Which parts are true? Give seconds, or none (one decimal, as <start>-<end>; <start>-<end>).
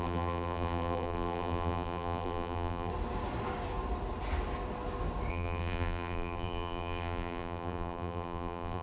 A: 2.9-5.3